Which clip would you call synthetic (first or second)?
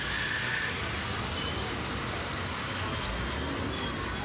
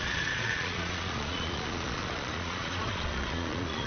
second